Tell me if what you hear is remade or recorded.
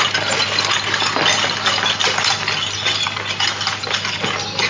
recorded